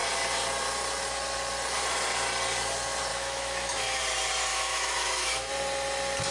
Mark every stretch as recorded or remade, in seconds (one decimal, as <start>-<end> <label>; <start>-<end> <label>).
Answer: 0.0-3.1 recorded; 3.1-4.0 remade; 4.0-4.5 recorded; 4.5-5.5 remade; 5.5-6.3 recorded